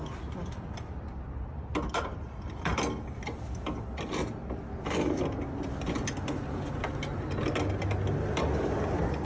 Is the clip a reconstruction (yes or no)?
no